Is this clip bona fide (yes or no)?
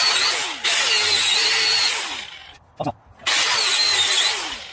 yes